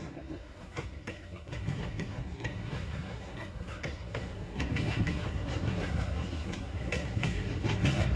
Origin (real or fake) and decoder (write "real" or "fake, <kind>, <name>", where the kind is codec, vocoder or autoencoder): fake, codec, SNAC